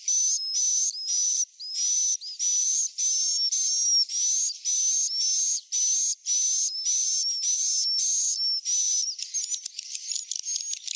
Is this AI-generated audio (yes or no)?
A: no